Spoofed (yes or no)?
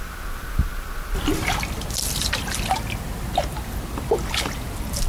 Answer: no